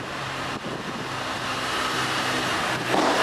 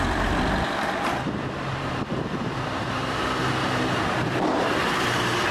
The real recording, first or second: first